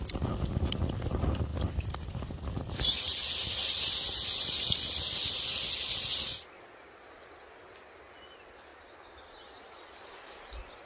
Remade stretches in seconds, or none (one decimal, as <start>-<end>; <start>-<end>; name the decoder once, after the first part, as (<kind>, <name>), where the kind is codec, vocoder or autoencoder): none